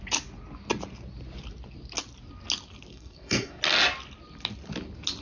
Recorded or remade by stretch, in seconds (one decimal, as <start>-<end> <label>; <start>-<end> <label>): 0.0-2.9 recorded; 2.9-3.6 remade; 3.6-5.2 recorded